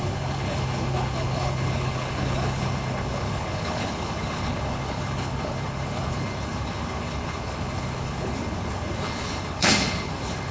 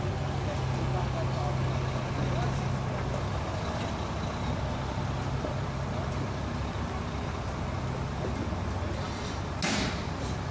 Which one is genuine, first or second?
second